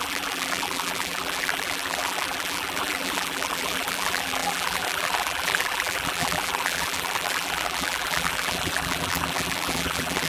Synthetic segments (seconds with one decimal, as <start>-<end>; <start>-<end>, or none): 0.0-10.3